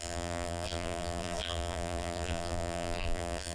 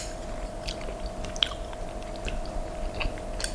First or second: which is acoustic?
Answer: second